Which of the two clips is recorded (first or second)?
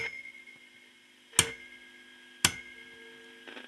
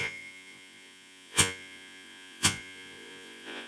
first